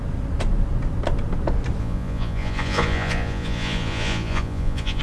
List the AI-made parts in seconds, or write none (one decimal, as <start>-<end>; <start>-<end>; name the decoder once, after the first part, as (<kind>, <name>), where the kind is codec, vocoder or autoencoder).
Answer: 1.8-5.0 (vocoder, Vocos)